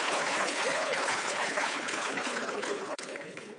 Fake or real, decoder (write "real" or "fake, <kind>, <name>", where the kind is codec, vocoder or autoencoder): fake, codec, HILCodec